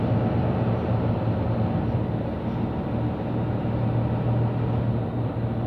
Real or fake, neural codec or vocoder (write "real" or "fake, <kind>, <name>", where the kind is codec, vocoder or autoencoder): real